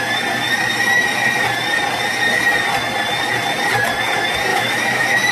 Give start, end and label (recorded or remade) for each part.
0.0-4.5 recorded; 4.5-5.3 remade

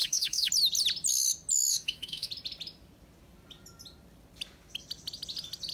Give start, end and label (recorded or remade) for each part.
0.0-0.5 remade; 0.5-1.7 recorded; 1.7-2.3 remade; 2.3-5.7 recorded

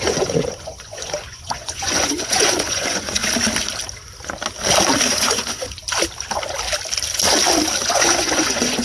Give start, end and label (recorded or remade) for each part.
0.0-3.2 remade; 3.2-5.1 recorded; 5.1-5.8 remade; 5.8-7.8 recorded; 7.8-8.8 remade